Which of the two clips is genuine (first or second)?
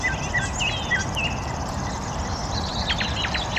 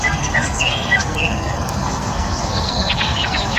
first